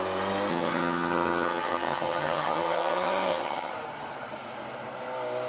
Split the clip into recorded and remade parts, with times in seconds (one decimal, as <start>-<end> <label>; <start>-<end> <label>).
0.0-0.5 recorded; 0.5-3.7 remade; 3.7-5.5 recorded